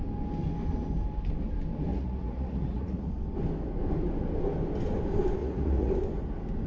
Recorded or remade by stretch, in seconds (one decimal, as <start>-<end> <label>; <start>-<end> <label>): 0.0-1.9 recorded; 1.9-3.1 remade; 3.1-5.4 recorded; 5.4-5.9 remade; 5.9-6.7 recorded